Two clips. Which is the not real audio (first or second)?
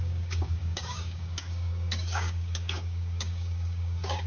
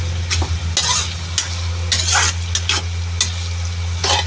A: first